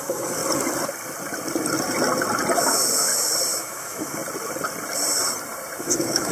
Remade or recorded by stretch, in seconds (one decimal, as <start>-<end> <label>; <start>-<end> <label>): 0.0-0.4 remade; 0.4-2.6 recorded; 2.6-3.1 remade; 3.1-3.6 recorded; 3.6-4.2 remade; 4.2-5.8 recorded; 5.8-6.3 remade